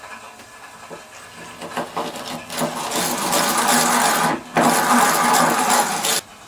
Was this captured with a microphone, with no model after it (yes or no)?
yes